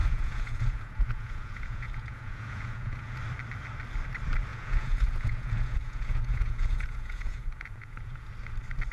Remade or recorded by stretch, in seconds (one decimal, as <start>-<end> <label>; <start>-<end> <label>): 0.0-3.2 remade; 3.2-4.5 recorded; 4.5-8.3 remade; 8.3-8.9 recorded